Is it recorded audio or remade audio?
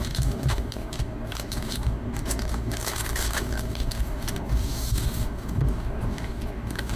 remade